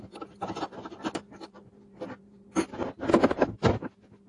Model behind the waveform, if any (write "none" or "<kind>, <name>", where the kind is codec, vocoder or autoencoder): none